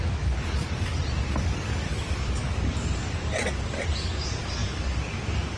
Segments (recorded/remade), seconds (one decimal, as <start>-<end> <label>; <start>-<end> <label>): 0.0-0.9 remade; 0.9-1.4 recorded; 1.4-5.6 remade